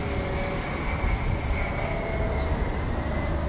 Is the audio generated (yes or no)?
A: no